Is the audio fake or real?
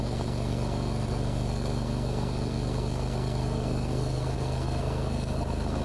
fake